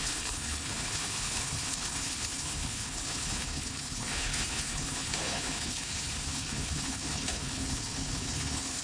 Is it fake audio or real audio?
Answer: fake